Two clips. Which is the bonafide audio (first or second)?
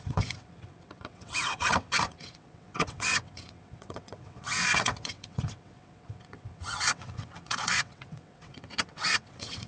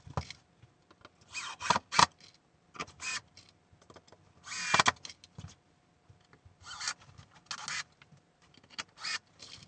second